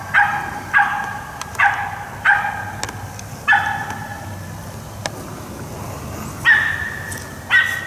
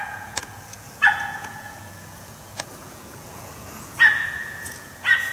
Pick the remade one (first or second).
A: second